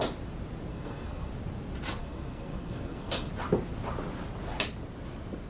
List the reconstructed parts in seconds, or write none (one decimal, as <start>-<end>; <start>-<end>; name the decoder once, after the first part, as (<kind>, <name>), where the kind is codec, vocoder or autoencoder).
0.7-1.3 (codec, SNAC); 2.0-3.3